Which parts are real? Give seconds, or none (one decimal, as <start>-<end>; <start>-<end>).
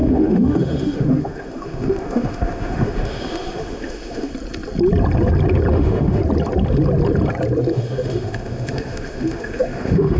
4.3-5.7; 6.2-7.7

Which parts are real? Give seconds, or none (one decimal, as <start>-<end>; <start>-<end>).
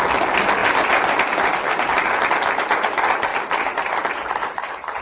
0.0-3.3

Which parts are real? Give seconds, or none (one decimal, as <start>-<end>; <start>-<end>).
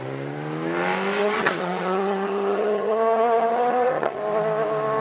0.0-1.2; 4.2-5.0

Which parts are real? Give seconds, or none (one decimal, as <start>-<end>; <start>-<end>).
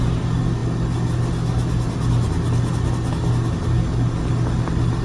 0.0-5.0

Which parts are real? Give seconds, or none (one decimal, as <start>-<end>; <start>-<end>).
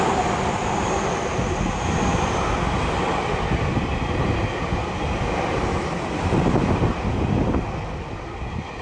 0.0-8.8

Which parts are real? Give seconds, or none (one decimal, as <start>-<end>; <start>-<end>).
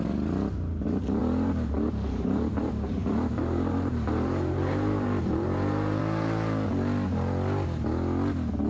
0.0-1.2; 6.0-8.7